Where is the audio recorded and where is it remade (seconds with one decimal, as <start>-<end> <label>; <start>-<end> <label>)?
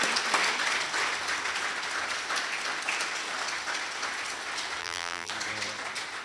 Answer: 0.0-4.8 recorded; 4.8-5.3 remade; 5.3-6.2 recorded